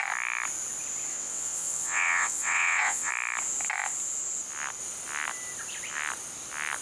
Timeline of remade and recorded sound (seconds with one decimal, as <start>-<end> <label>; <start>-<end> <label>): 0.0-1.1 recorded; 1.1-3.1 remade; 3.1-6.8 recorded